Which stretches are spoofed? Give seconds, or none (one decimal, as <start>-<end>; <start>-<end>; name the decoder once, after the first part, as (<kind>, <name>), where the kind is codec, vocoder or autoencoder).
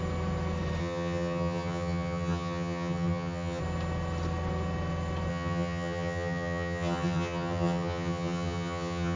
0.8-3.6 (vocoder, HiFi-GAN); 5.3-9.2